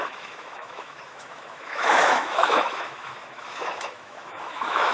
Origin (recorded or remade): remade